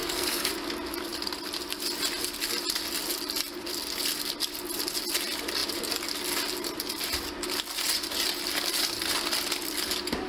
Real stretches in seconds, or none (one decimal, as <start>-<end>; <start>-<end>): 0.5-10.3